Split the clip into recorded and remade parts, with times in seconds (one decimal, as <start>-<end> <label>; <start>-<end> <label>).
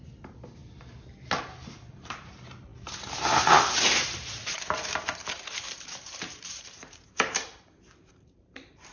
0.0-0.6 remade; 0.6-1.4 recorded; 1.4-8.9 remade